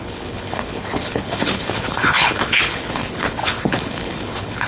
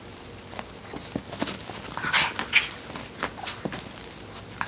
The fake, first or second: first